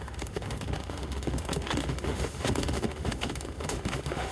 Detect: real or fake fake